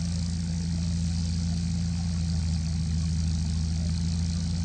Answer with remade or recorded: recorded